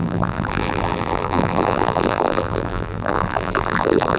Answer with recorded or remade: remade